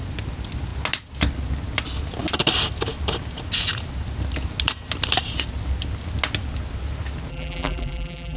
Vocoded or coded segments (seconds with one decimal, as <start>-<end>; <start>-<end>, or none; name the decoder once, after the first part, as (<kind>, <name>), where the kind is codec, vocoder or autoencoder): 7.3-8.4 (vocoder, BigVGAN v2)